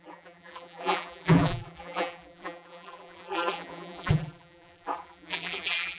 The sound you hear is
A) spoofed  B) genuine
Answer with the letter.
A